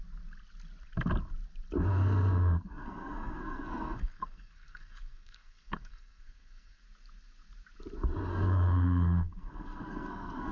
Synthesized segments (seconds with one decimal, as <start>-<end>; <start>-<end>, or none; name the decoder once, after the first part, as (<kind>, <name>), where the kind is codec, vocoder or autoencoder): 1.9-6.8 (codec, SNAC); 8.3-10.5